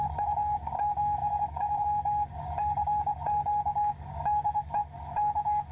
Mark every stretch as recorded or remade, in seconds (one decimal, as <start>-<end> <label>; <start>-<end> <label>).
0.0-4.8 remade; 4.8-5.7 recorded